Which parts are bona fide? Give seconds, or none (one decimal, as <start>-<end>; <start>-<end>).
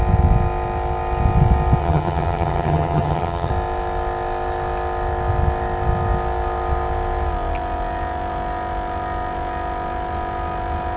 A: 0.0-1.8; 3.5-11.0